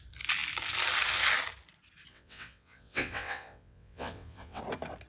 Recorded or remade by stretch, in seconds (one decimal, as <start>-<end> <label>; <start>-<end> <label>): 0.0-2.1 recorded; 2.1-4.6 remade; 4.6-5.1 recorded